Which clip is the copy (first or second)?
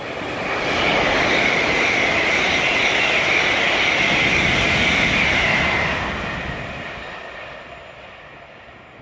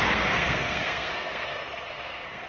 second